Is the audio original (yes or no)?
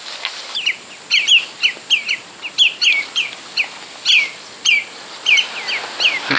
yes